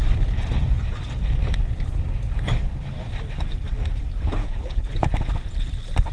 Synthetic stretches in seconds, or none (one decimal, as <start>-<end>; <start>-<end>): 4.4-4.9